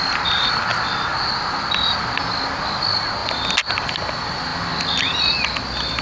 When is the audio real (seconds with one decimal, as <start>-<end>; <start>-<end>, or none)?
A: 0.0-6.0